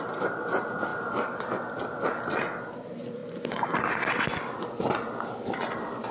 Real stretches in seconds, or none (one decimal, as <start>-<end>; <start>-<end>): 0.0-6.1